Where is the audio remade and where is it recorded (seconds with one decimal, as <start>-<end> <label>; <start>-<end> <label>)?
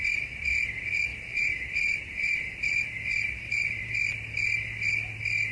0.0-1.1 recorded; 1.1-4.0 remade; 4.0-5.5 recorded